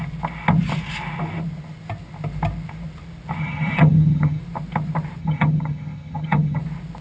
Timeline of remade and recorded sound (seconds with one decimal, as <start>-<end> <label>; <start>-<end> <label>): 0.0-3.4 recorded; 3.4-4.4 remade; 4.4-5.2 recorded; 5.2-6.6 remade; 6.6-7.0 recorded